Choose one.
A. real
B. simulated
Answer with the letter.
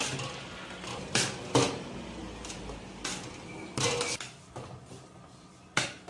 A